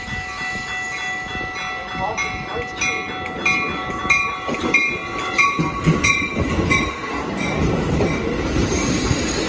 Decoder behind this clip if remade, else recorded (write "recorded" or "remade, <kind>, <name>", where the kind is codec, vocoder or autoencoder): recorded